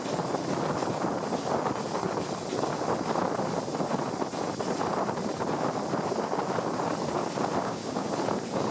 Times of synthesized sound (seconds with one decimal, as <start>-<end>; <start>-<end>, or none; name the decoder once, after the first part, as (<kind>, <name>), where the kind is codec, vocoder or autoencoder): 7.6-8.1 (codec, DAC)